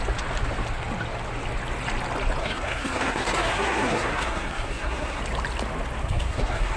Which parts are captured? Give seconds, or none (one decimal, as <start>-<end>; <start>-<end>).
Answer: 0.0-2.4; 5.2-6.0